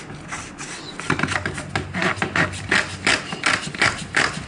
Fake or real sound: real